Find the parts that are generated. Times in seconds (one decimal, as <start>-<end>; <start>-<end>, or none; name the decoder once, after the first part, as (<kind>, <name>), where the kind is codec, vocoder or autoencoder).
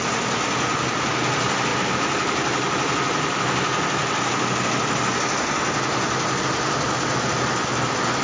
none